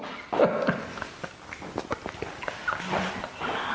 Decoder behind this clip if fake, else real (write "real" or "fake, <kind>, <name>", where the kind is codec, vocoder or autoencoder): real